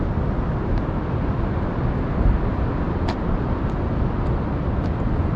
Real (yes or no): yes